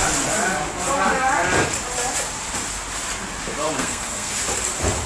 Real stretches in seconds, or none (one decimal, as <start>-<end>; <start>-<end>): 0.0-3.8; 4.3-5.1

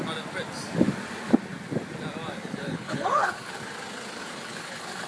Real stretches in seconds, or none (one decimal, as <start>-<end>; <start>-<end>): 0.0-2.6; 3.6-4.2

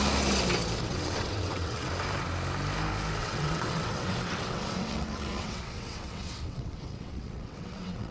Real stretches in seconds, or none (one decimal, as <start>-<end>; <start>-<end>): 0.0-0.9; 1.9-3.2